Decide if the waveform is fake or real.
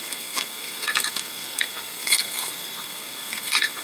fake